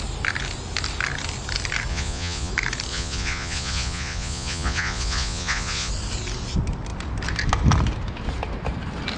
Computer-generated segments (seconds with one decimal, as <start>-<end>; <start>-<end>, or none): 1.9-2.5; 2.9-5.9